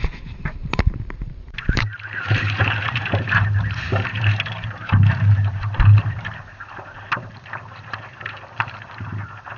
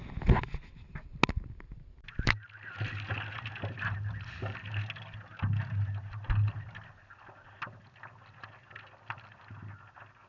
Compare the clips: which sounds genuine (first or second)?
second